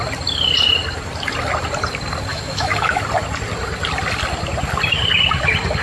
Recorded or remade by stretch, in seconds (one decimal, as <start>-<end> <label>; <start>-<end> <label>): 0.0-2.3 recorded; 2.3-3.0 remade; 3.0-5.8 recorded